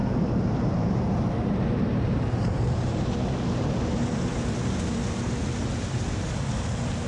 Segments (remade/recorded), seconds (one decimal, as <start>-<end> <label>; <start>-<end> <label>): 0.0-3.7 remade; 3.7-7.1 recorded